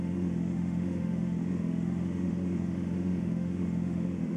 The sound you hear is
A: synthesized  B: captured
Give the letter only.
A